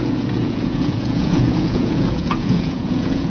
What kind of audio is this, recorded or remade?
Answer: remade